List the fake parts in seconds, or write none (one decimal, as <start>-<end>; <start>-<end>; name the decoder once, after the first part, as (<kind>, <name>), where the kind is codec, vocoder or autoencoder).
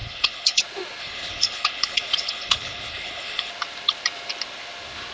0.0-0.6 (codec, HILCodec); 1.0-3.5